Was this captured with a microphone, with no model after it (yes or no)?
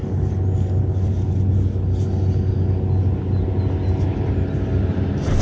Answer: yes